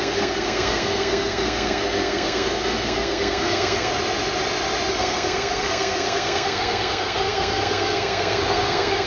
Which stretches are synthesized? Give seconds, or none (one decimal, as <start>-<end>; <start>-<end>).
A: 0.0-3.9; 4.9-9.1

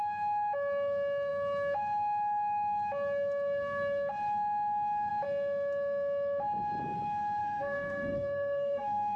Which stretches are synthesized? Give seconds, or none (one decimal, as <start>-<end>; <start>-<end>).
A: 7.4-9.2

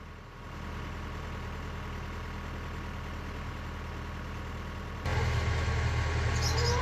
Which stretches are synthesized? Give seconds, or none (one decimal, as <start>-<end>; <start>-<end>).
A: none

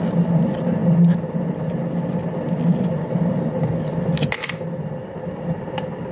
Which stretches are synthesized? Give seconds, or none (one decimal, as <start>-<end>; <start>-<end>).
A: none

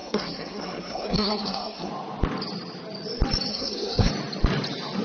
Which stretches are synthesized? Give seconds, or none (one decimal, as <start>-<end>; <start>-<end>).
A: 0.0-1.9; 3.5-4.1

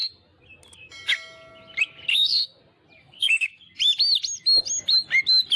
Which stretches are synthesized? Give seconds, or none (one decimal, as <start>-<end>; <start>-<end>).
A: 2.1-2.6; 3.0-3.6